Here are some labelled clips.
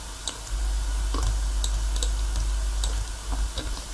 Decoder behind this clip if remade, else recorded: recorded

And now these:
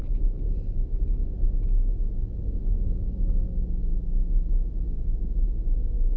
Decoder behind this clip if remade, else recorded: recorded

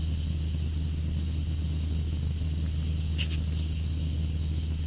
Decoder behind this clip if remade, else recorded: recorded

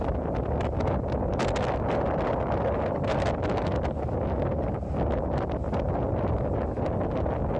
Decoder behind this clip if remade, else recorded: recorded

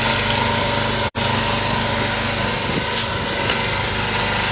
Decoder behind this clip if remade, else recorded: recorded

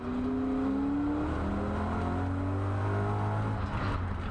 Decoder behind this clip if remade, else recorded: recorded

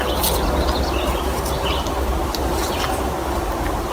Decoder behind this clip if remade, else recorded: recorded